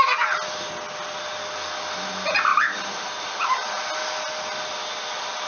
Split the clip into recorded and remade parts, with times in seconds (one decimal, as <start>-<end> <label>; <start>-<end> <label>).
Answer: 0.0-5.5 recorded